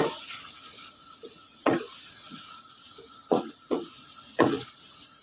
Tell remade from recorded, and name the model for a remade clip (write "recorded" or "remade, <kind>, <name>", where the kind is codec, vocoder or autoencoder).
remade, vocoder, Vocos